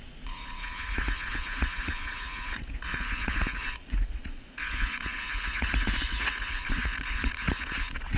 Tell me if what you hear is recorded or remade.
remade